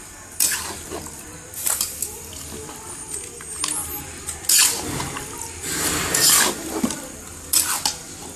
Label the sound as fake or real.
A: real